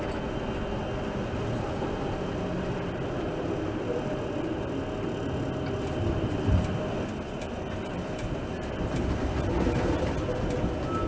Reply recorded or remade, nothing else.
recorded